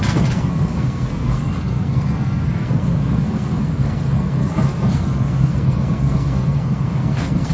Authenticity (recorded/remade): remade